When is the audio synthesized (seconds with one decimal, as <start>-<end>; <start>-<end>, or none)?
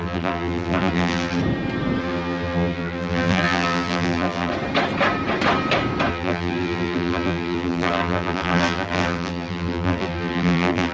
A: 0.0-1.4; 2.0-4.5; 6.1-10.9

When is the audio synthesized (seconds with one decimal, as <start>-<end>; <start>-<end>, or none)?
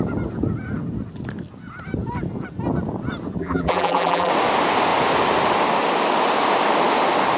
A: 3.4-4.3